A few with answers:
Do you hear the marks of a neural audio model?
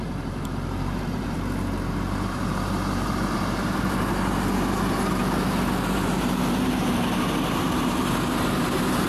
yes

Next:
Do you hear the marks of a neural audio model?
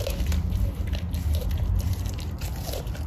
yes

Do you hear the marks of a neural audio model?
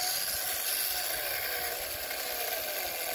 no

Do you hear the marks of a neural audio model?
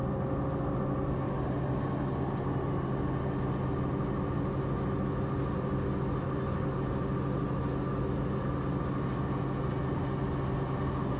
no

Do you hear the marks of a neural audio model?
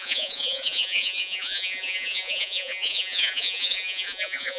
yes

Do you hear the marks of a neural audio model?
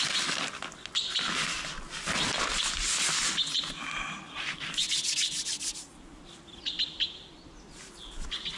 no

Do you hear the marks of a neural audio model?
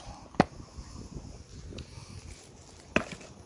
no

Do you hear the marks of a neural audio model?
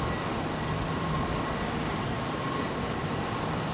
no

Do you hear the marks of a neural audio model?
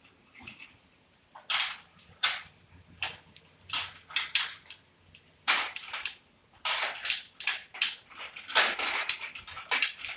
yes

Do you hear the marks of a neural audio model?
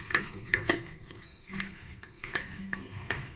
yes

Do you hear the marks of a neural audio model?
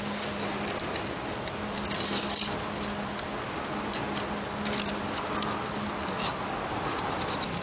no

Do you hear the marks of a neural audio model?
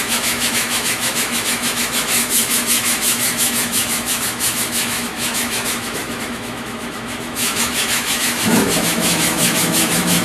yes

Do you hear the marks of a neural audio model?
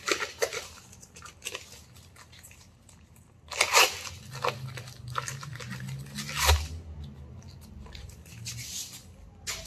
no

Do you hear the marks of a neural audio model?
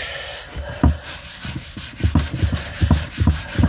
no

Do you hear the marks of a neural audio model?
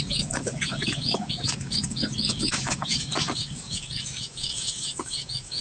yes